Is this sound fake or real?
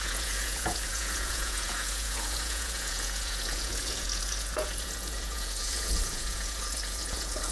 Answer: fake